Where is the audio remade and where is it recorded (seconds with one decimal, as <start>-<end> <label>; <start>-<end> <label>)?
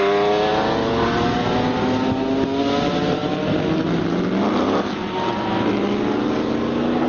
0.0-7.1 recorded